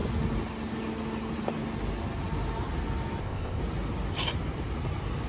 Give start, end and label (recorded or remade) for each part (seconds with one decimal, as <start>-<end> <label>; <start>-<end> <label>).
0.0-3.2 recorded; 3.2-3.6 remade; 3.6-5.3 recorded